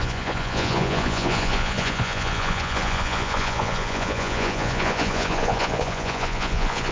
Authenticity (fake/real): fake